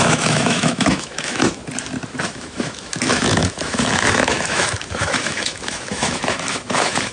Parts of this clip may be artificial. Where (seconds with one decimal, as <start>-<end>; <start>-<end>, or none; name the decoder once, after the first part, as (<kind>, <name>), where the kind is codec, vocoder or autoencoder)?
0.0-1.6 (autoencoder, DAC-VAE); 2.2-7.1